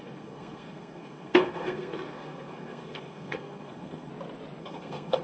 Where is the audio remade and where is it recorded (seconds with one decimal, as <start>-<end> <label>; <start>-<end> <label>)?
0.0-4.1 remade; 4.1-4.6 recorded; 4.6-5.2 remade